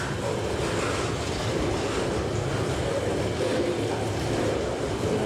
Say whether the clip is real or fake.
real